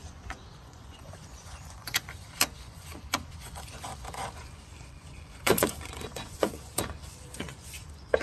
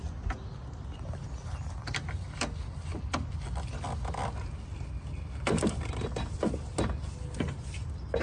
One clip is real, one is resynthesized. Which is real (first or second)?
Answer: second